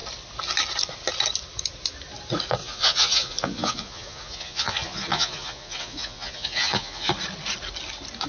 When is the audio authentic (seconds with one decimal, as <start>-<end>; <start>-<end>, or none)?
0.0-2.6; 7.1-8.3